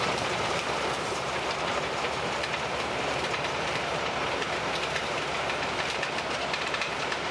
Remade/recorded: remade